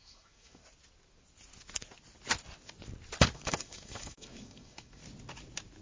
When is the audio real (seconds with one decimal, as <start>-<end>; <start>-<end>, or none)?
0.6-3.3; 5.0-5.8